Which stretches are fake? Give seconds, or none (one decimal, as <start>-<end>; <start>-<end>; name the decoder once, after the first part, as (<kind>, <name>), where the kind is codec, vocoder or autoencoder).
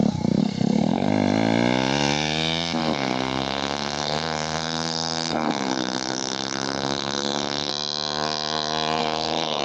0.4-1.1 (codec, SNAC); 2.8-7.7; 9.0-9.6